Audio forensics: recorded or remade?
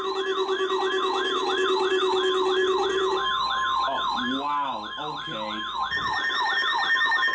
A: recorded